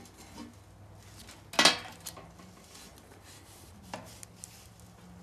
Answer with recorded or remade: recorded